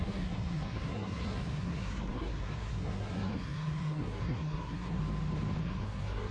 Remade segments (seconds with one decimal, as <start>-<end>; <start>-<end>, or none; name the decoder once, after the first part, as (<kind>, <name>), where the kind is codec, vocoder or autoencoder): 0.0-5.0 (codec, SNAC); 5.6-6.3